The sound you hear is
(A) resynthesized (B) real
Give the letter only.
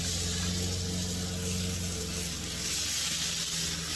B